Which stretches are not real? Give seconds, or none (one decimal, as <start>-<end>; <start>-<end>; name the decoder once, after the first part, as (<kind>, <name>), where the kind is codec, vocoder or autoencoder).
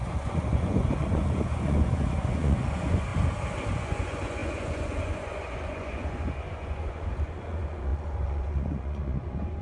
0.0-3.1 (vocoder, Vocos); 3.7-9.6